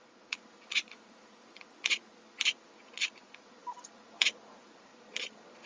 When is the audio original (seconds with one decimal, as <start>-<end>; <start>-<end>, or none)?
2.2-2.7; 4.9-5.7